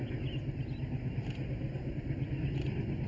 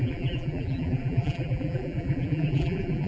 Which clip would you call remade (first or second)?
second